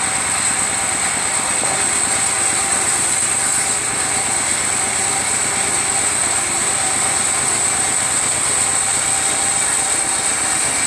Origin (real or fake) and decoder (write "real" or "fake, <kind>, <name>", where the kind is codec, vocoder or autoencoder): real